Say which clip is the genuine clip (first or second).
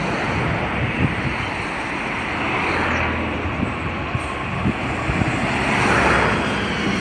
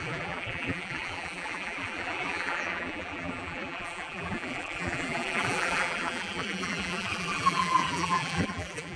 first